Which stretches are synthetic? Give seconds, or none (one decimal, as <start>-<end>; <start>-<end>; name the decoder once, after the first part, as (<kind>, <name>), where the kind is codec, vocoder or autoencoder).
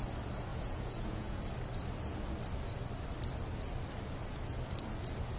0.5-1.4 (vocoder, Vocos)